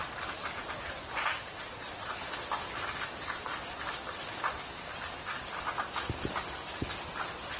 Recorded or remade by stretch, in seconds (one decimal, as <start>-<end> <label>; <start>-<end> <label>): 0.0-2.1 remade; 2.1-7.6 recorded